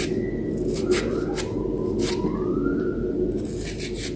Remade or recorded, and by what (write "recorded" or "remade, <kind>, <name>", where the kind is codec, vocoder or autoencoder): recorded